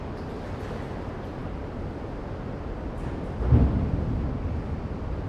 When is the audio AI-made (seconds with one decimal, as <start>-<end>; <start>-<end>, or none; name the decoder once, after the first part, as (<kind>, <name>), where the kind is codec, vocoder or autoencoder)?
none